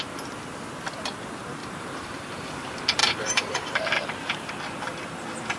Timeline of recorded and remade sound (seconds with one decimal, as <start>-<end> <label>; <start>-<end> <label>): 0.0-1.6 recorded; 1.6-2.5 remade; 2.5-3.0 recorded; 3.0-4.5 remade; 4.5-5.6 recorded